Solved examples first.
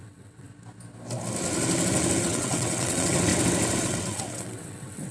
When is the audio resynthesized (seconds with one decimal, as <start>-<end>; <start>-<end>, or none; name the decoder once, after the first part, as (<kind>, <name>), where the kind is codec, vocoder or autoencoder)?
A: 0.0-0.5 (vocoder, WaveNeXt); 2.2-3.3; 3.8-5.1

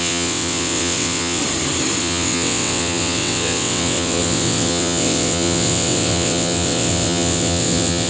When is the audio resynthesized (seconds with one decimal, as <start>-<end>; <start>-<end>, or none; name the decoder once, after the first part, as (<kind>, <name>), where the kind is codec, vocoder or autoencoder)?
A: 0.0-1.4 (vocoder, WaveNeXt); 2.0-8.1

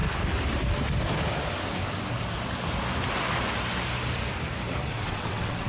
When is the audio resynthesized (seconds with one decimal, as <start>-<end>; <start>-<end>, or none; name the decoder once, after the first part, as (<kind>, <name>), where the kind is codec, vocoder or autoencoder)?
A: 4.9-5.7 (vocoder, WaveNeXt)

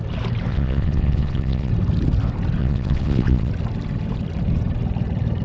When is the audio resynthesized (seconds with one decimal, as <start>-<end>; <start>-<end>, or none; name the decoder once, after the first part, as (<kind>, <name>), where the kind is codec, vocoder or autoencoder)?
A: 0.5-1.7 (vocoder, WaveNeXt); 2.6-3.5